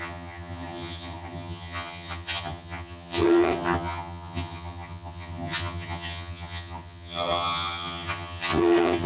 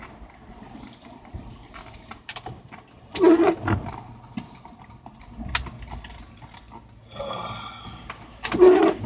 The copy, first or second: first